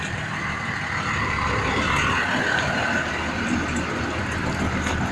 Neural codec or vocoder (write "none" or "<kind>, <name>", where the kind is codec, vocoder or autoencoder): none